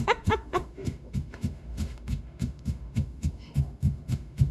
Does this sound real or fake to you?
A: fake